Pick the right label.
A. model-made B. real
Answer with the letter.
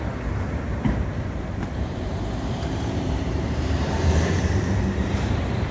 A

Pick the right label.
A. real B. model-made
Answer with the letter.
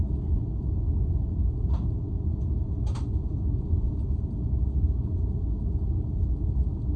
A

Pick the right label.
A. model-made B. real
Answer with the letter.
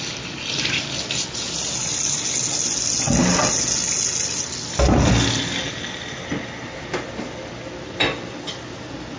B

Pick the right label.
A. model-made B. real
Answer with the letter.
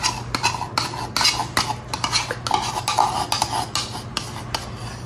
B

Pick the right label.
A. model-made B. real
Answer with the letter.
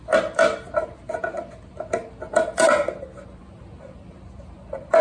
A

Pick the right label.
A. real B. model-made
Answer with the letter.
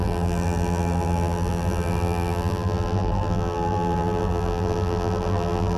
B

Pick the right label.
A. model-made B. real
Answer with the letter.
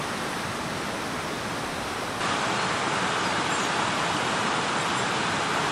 B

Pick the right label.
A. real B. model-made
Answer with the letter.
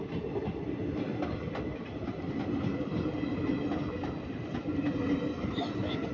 A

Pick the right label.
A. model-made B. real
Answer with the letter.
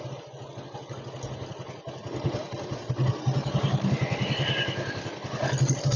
B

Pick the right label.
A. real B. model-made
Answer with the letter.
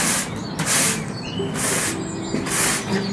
A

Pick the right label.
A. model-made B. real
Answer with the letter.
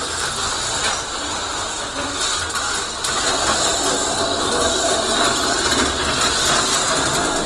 B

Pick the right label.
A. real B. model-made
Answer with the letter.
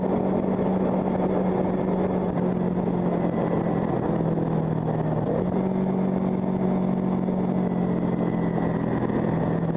A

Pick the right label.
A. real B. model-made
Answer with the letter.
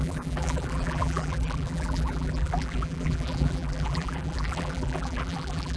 B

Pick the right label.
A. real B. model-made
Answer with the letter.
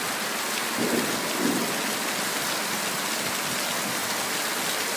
A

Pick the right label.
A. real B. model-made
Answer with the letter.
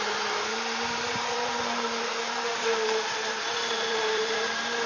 B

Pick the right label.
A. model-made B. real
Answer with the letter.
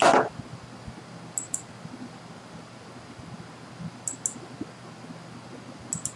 B